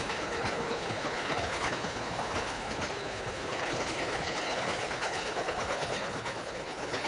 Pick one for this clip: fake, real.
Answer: fake